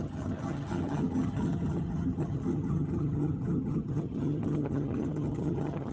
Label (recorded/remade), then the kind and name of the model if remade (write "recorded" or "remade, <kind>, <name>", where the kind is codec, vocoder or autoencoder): remade, vocoder, HiFi-GAN